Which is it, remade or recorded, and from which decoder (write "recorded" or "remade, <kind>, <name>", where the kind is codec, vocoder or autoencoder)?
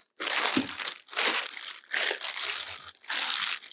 recorded